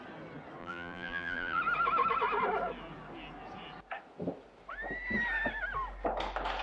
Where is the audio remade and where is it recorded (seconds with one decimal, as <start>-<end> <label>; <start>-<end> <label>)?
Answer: 0.0-0.6 recorded; 0.6-1.6 remade; 1.6-6.6 recorded